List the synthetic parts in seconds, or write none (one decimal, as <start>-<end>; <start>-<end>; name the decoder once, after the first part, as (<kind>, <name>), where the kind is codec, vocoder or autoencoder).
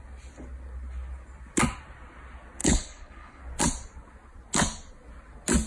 2.6-3.4 (codec, HILCodec)